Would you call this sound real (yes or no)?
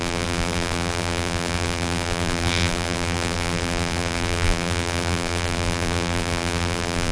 no